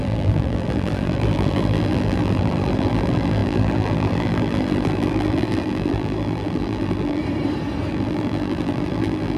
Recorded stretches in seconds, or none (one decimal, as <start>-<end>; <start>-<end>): 7.2-7.9

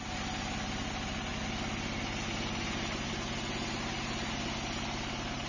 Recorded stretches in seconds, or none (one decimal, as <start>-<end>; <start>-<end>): 0.0-5.5

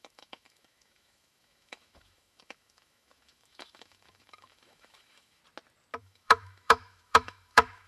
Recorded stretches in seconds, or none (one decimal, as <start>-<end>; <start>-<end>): 5.4-6.0

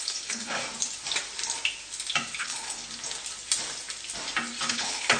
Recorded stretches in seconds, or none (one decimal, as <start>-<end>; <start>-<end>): 0.6-2.4; 2.8-4.7

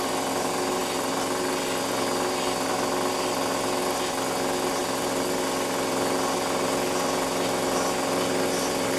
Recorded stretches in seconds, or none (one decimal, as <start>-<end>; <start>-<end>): 0.0-9.0

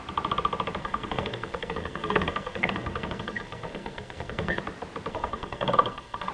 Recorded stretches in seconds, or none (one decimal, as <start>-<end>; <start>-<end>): 0.0-0.8; 4.6-5.1

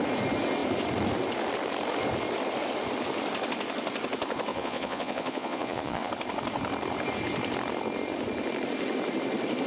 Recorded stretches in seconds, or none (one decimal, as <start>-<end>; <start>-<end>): 0.0-4.5; 6.1-9.7